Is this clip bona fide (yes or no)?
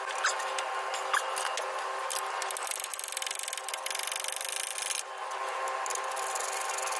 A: yes